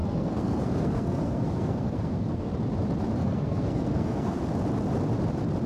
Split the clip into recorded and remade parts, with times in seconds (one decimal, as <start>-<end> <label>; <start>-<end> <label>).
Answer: 0.0-2.5 remade; 2.5-3.2 recorded; 3.2-4.4 remade; 4.4-5.7 recorded